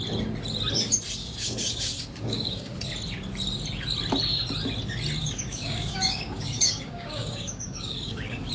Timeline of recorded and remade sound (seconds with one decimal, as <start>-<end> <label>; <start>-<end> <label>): 0.0-1.2 recorded; 1.2-2.9 remade; 2.9-5.2 recorded; 5.2-8.5 remade